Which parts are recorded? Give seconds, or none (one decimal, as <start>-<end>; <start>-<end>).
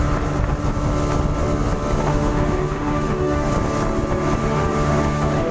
0.0-2.1; 3.5-4.4